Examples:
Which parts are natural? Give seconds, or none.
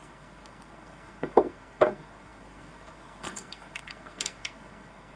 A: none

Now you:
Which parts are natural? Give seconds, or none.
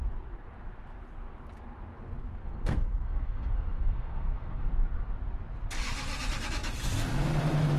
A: 0.0-2.4; 4.7-7.8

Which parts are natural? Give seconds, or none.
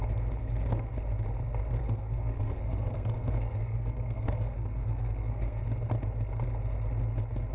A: 0.0-0.4; 0.9-1.8; 5.6-7.5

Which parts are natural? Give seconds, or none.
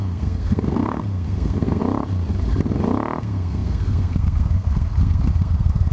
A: 1.8-3.2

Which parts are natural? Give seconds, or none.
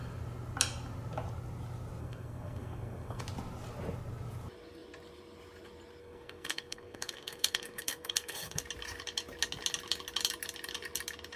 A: 0.0-2.0; 3.2-6.0; 8.6-11.4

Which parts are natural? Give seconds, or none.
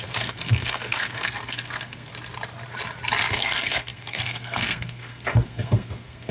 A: 2.1-3.3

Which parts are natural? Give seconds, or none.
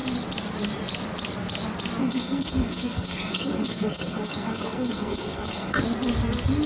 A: 0.0-2.0; 5.8-6.7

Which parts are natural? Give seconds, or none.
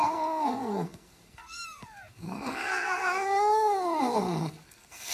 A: none